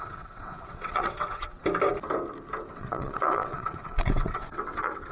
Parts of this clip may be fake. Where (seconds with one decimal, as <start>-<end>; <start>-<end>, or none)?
0.0-1.6; 2.7-5.1

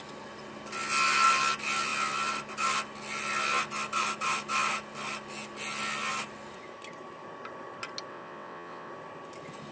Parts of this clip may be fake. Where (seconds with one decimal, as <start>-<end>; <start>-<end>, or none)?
8.1-8.9

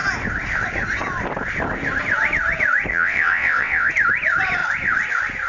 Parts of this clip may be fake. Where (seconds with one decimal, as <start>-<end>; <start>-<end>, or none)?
2.9-3.9

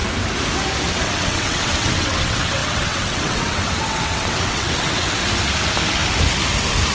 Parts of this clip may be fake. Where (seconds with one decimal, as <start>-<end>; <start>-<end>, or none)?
0.8-5.2

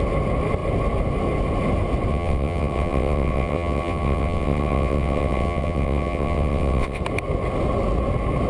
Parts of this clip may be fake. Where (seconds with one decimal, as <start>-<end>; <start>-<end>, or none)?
2.1-7.0

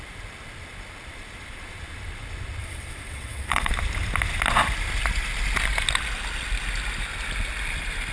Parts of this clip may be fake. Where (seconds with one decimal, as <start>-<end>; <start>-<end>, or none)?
2.6-3.7

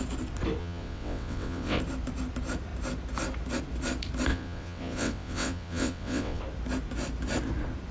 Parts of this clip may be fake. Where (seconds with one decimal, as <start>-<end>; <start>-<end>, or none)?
0.6-1.8; 4.3-6.4